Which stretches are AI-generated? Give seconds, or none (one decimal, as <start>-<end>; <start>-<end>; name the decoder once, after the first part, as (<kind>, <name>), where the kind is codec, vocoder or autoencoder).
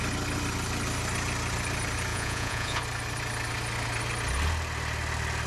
2.1-2.8 (vocoder, Vocos)